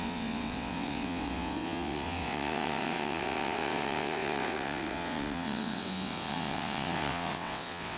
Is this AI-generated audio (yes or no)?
yes